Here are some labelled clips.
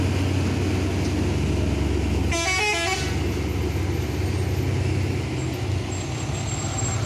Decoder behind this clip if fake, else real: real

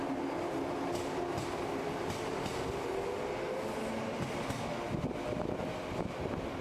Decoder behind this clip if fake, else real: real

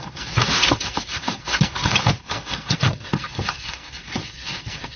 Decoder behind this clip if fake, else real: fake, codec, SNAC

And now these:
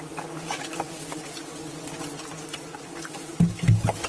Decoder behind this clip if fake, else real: real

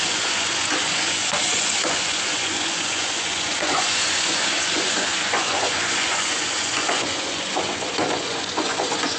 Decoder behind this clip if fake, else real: fake, vocoder, Vocos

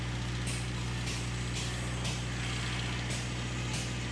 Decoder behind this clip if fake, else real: real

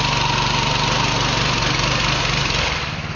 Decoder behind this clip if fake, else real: real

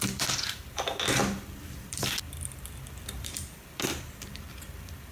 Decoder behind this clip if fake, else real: fake, vocoder, BigVGAN v2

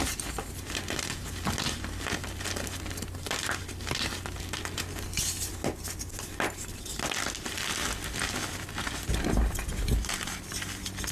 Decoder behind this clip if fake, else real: real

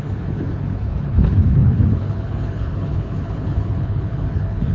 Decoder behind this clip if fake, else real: fake, codec, HILCodec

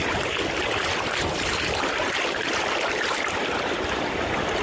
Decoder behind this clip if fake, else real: real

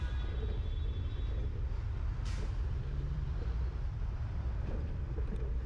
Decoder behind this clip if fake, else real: fake, vocoder, BigVGAN v2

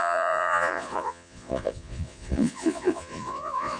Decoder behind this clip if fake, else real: fake, vocoder, Vocos